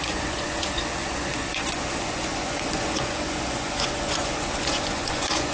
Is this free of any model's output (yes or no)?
no